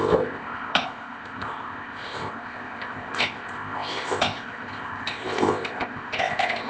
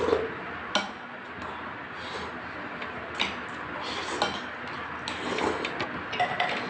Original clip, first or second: second